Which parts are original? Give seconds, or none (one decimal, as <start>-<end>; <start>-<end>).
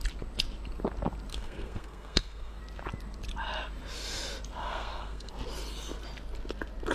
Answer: 0.0-1.3; 2.6-4.6; 5.3-6.9